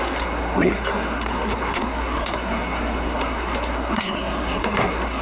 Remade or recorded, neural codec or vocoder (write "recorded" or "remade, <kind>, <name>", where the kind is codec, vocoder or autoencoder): remade, codec, SNAC